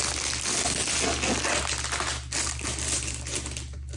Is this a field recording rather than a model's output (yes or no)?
yes